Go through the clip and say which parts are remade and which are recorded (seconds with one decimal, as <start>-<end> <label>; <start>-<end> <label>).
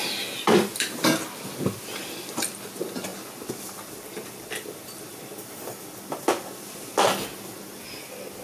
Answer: 0.0-8.4 recorded